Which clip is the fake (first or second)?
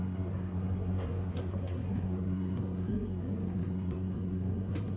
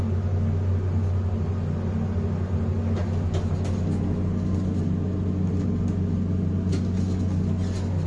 first